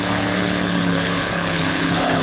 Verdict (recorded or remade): remade